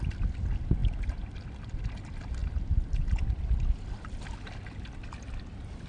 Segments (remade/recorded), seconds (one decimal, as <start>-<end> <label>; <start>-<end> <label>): 0.0-5.9 recorded